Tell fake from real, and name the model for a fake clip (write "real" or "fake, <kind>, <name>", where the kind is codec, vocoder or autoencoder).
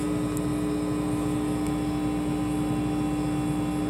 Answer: real